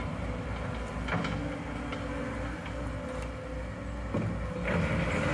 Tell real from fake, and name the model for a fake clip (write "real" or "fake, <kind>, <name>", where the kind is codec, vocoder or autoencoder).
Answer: real